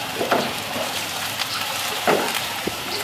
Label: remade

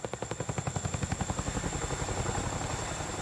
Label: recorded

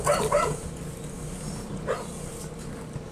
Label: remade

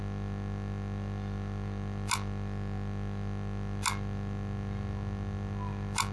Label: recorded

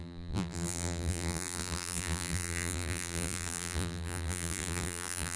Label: remade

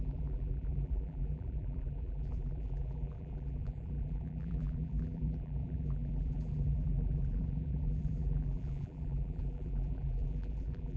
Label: remade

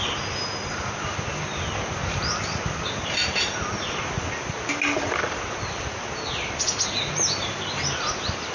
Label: recorded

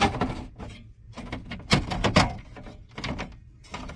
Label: recorded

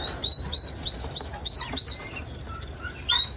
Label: recorded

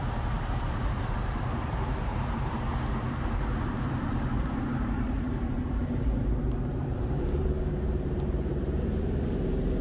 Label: remade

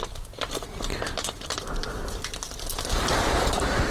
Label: recorded